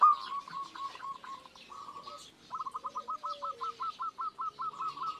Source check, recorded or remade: recorded